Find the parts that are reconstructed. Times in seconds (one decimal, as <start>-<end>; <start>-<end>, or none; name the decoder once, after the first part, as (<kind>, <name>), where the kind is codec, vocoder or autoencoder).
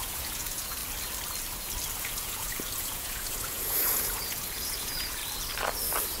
0.0-0.8 (vocoder, Vocos); 2.0-5.2